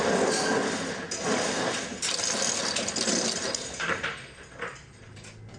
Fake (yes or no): no